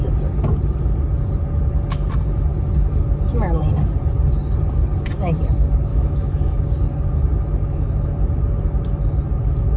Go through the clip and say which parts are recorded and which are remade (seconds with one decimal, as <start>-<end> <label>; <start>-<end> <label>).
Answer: 0.0-5.9 recorded; 5.9-6.6 remade; 6.6-9.8 recorded